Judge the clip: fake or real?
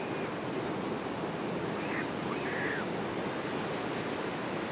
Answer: real